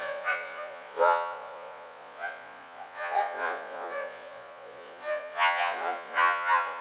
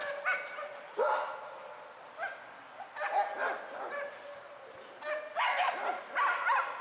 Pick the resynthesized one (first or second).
first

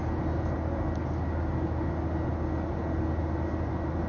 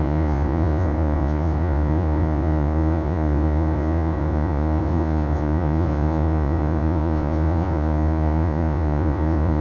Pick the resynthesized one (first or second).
second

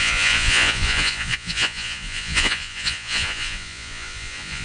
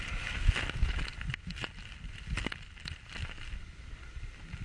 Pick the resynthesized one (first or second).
first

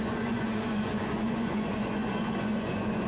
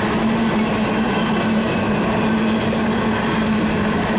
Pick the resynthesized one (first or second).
first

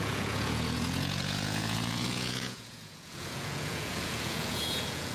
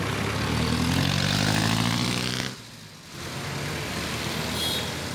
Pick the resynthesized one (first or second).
first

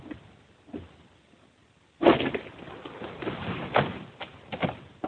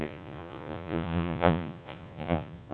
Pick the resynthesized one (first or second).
second